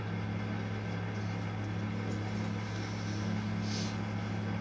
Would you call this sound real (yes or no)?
yes